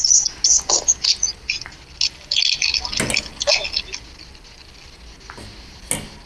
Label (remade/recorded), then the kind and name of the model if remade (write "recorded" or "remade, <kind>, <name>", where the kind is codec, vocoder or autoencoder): recorded